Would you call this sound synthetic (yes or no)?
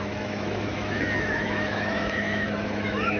yes